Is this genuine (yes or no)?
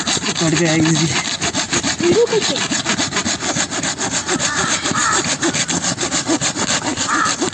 yes